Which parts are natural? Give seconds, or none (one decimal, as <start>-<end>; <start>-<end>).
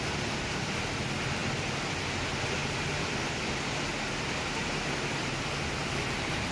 0.0-6.5